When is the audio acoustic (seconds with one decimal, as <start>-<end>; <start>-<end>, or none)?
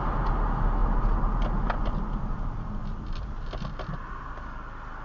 0.0-5.0